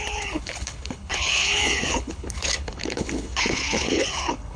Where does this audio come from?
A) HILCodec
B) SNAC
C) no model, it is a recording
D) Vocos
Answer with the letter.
A